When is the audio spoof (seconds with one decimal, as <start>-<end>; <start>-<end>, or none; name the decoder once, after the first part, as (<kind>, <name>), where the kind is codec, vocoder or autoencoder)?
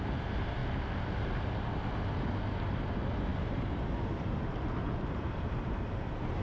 0.0-0.6 (vocoder, BigVGAN v2); 1.9-6.4